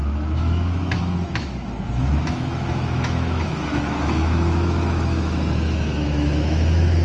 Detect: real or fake fake